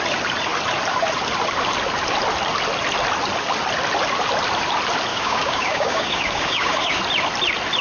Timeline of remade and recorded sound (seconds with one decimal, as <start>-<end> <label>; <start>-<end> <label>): 0.0-5.1 recorded; 5.1-7.0 remade; 7.0-7.8 recorded